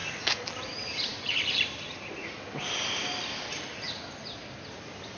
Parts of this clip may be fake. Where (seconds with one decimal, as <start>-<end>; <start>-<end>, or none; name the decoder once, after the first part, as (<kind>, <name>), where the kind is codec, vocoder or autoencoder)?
1.1-4.2 (vocoder, BigVGAN v2)